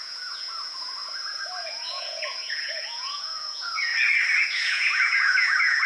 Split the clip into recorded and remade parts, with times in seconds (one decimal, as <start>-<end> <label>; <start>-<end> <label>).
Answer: 0.0-3.9 remade; 3.9-4.4 recorded; 4.4-5.9 remade